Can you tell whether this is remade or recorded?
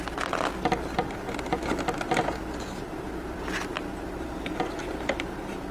recorded